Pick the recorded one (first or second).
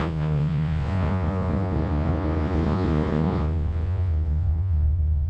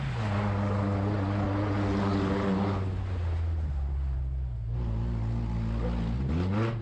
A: second